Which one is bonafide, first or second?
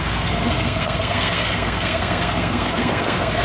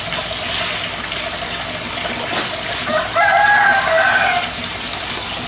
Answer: second